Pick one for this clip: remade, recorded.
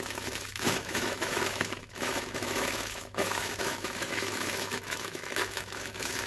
remade